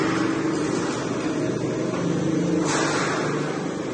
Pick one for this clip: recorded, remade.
recorded